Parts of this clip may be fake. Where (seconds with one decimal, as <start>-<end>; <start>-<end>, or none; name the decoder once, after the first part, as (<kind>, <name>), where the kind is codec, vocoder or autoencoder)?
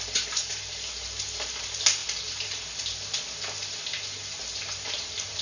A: none